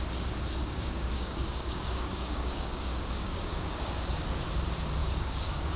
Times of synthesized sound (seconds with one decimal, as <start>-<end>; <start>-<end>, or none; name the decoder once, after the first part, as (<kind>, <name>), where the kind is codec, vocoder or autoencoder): 0.6-4.1 (codec, DAC); 5.0-5.8